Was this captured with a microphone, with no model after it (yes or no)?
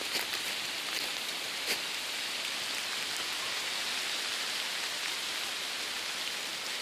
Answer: yes